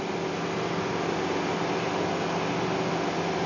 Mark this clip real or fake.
real